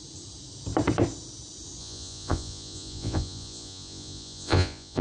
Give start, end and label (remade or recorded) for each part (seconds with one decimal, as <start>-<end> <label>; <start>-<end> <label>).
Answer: 0.0-1.8 recorded; 1.8-5.0 remade